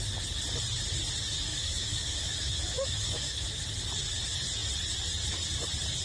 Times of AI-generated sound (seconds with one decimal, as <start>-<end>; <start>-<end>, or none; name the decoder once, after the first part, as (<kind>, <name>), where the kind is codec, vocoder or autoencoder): 1.5-3.6 (autoencoder, DAC-VAE)